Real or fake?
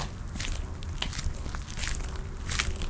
real